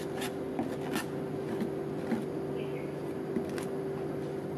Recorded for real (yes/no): yes